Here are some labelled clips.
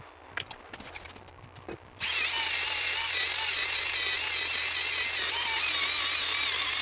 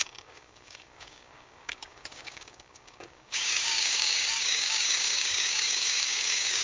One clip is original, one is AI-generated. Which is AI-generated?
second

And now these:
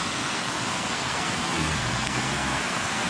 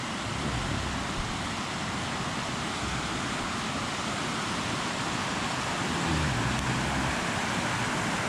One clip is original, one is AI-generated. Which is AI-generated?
first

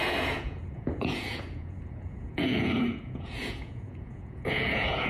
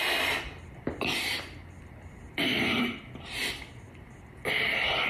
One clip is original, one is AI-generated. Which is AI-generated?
first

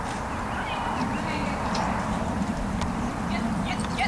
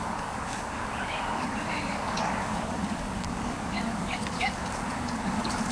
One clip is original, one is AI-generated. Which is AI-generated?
second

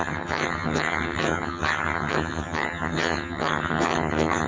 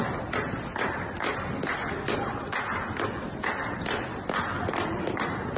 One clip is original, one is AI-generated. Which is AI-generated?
first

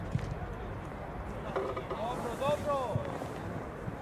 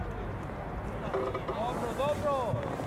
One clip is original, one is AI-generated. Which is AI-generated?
first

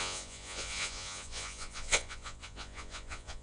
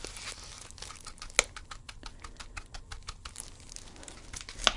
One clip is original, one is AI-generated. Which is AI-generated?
first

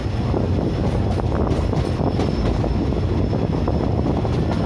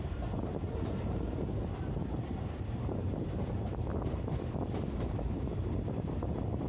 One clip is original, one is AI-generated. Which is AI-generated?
second